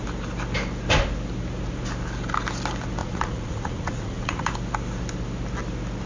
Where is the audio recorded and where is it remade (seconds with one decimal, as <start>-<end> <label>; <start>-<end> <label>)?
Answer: 0.0-3.0 recorded; 3.0-4.5 remade; 4.5-6.1 recorded